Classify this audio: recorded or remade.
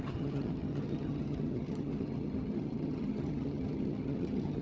remade